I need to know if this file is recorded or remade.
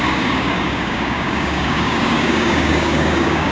remade